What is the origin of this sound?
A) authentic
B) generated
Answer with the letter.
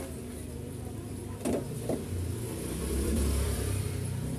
B